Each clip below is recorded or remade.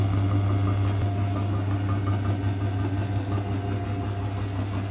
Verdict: recorded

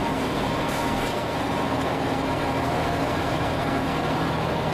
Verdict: remade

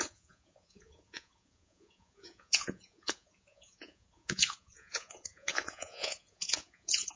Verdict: remade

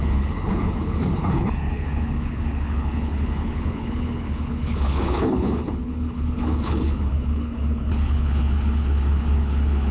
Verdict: remade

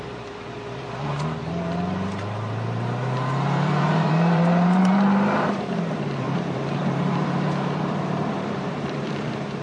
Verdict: remade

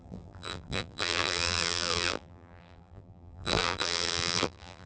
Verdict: remade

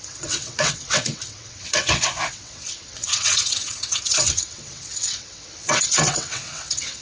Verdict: remade